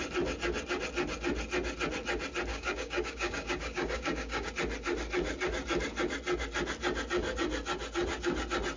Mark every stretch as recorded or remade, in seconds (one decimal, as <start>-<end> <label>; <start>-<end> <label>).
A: 0.0-2.5 recorded; 2.5-4.5 remade; 4.5-8.8 recorded